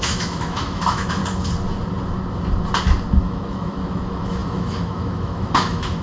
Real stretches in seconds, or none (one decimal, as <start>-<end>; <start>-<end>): 1.2-3.2